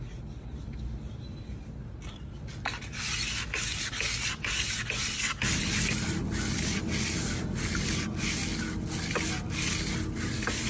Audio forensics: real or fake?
real